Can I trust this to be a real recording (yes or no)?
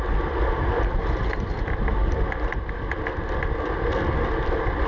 yes